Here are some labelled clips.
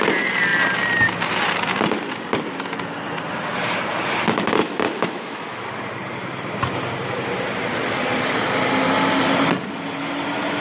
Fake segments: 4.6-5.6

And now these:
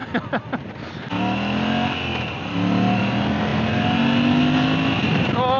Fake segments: none

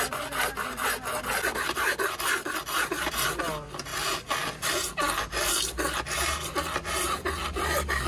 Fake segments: none

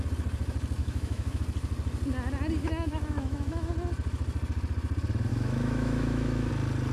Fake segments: 0.8-1.4; 2.6-3.7; 5.3-6.5

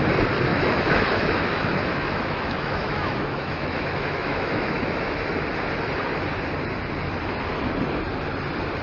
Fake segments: 0.5-5.3

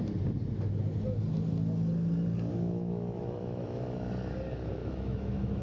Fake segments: 2.5-4.1; 4.8-5.6

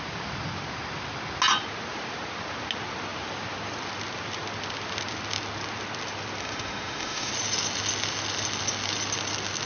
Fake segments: 6.4-7.3

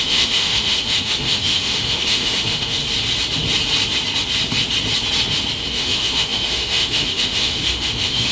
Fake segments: 0.0-2.8; 5.7-8.3